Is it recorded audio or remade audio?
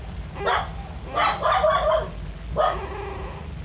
recorded